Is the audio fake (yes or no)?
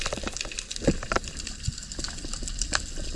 no